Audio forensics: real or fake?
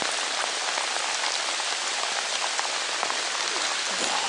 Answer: real